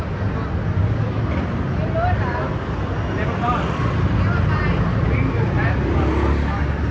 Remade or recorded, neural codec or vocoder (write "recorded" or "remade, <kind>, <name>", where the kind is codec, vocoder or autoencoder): recorded